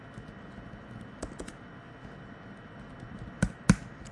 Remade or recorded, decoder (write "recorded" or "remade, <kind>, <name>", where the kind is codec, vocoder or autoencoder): recorded